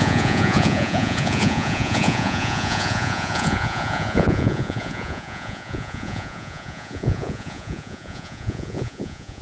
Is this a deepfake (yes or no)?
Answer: yes